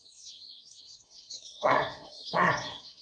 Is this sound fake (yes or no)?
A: yes